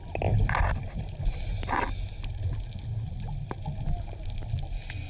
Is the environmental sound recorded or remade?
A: recorded